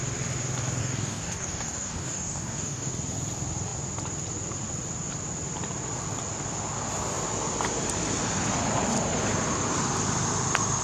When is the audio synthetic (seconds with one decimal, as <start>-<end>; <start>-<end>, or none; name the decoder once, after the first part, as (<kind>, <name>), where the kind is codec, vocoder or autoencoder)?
0.8-2.9 (codec, DAC)